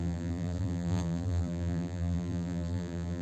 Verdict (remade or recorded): remade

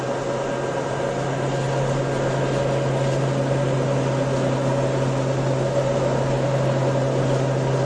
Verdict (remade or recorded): recorded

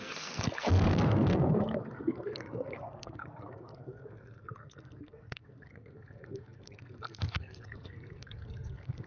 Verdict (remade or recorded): remade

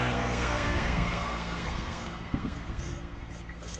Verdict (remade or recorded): remade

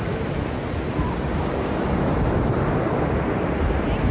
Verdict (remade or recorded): recorded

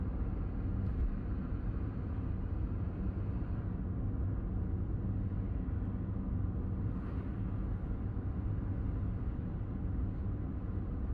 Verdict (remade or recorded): recorded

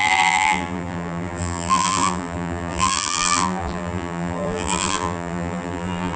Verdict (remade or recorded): remade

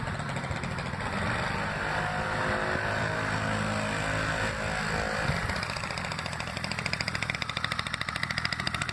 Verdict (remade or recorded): recorded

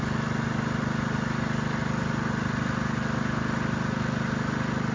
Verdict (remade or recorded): recorded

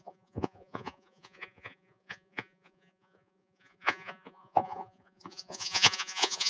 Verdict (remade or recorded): remade